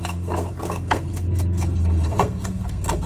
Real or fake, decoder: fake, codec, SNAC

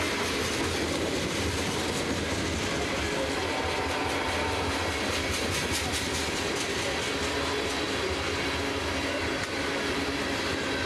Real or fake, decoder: real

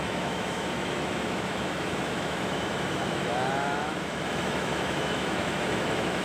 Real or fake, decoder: fake, autoencoder, DAC-VAE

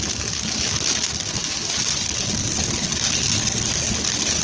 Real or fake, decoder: real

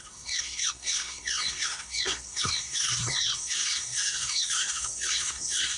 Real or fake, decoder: fake, codec, SNAC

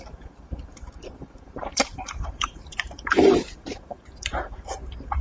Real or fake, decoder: fake, vocoder, BigVGAN v2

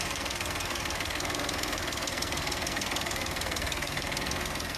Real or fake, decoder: fake, codec, SNAC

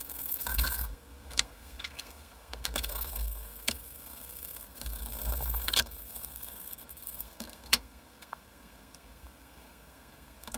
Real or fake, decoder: fake, codec, SNAC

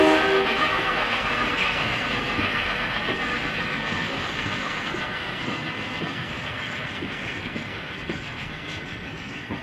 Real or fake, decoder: fake, codec, SNAC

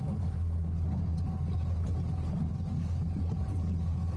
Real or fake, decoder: real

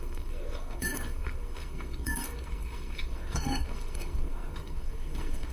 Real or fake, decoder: fake, codec, SNAC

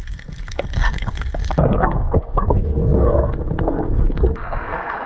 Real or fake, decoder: fake, codec, SNAC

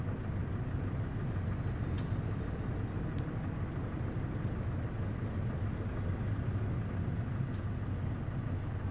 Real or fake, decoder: real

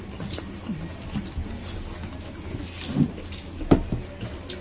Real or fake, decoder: real